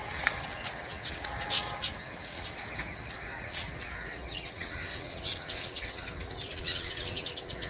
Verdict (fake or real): fake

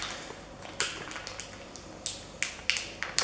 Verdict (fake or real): real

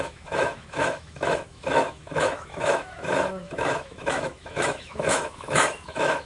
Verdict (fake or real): fake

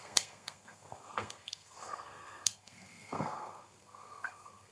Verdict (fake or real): fake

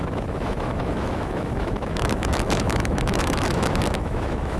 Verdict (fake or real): fake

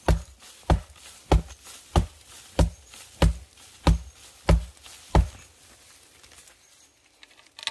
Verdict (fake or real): real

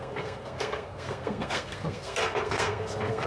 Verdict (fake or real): fake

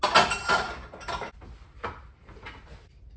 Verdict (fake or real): real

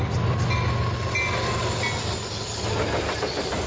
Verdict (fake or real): real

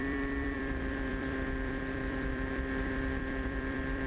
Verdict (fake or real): fake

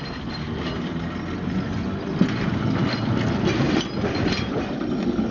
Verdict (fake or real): real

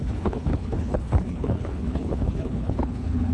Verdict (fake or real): fake